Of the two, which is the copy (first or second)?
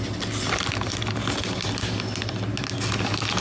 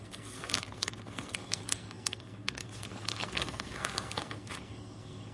second